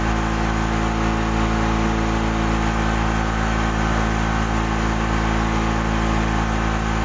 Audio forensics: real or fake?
real